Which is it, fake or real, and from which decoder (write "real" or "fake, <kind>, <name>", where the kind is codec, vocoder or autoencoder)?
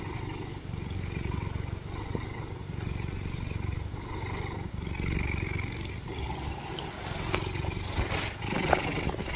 real